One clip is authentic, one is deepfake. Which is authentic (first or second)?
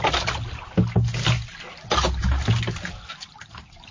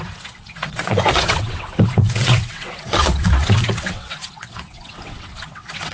first